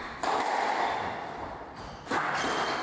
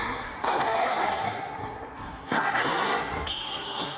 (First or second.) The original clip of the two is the first